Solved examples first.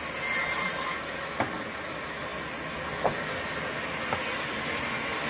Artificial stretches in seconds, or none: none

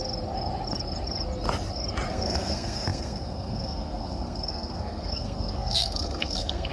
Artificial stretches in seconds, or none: 2.1-6.7

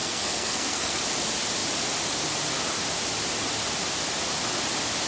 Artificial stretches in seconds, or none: 0.0-1.0